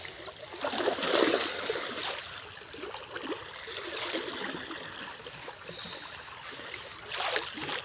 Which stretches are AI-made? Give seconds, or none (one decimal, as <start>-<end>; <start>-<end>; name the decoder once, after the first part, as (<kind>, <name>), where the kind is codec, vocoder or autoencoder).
none